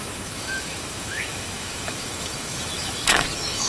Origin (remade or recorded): remade